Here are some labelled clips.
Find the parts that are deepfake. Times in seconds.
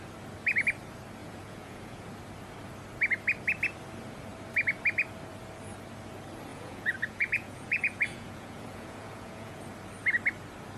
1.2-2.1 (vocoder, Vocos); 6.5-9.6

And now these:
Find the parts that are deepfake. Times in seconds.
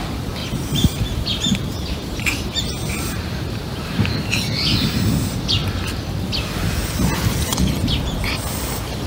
0.4-4.1 (vocoder, BigVGAN v2)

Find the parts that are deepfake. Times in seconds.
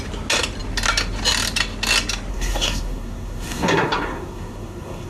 2.3-5.1 (codec, SNAC)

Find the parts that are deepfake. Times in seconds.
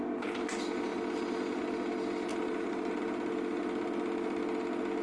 2.3-3.0 (vocoder, BigVGAN v2)